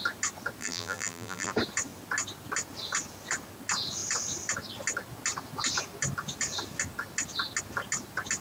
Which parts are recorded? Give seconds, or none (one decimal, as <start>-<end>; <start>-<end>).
0.0-0.6; 1.5-8.4